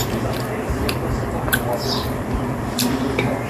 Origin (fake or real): fake